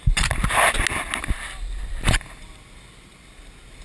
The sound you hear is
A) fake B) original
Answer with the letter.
B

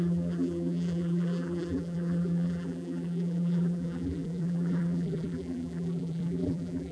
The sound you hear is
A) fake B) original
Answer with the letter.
A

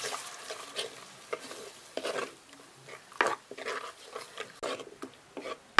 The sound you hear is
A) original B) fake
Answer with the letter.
A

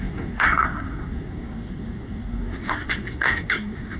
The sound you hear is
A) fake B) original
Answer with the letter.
A